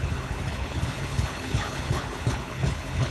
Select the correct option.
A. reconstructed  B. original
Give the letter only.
A